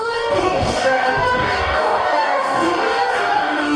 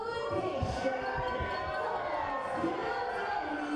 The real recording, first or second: second